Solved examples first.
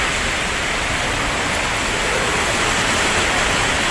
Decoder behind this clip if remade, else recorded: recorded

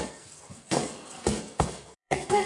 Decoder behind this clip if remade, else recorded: remade, codec, SNAC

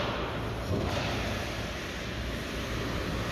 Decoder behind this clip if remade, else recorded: recorded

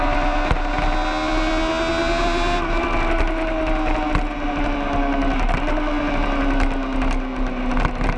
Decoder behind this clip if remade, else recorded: recorded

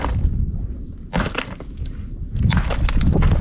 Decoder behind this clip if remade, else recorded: recorded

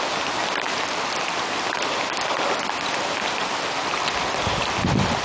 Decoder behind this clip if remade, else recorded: recorded